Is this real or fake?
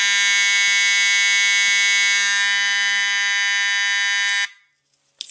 real